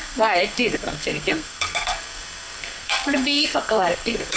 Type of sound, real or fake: fake